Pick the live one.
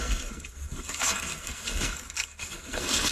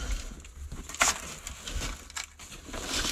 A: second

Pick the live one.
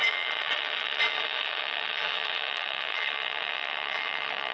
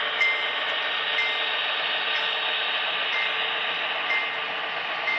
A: second